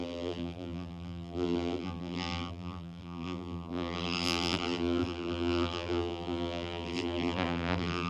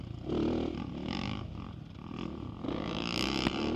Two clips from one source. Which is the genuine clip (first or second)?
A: second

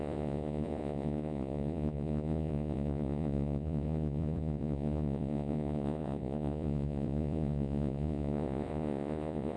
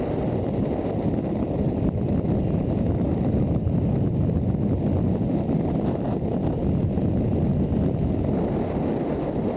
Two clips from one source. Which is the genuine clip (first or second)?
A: second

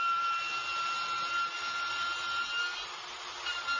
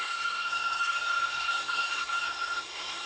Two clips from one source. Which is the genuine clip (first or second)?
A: first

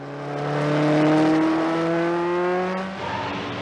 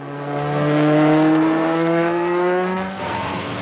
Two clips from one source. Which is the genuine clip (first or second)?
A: first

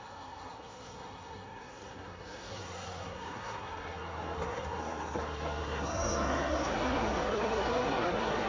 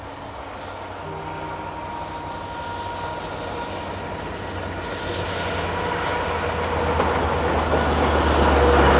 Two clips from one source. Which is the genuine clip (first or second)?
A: second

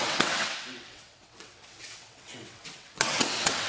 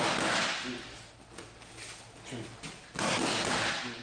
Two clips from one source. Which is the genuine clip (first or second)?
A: second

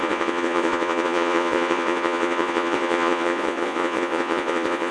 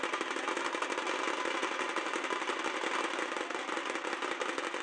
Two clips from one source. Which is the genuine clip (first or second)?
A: second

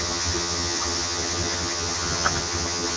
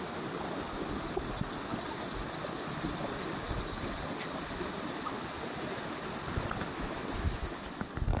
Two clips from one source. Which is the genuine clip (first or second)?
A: second